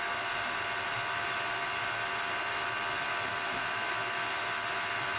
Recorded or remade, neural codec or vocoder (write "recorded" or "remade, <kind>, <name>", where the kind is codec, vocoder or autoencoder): recorded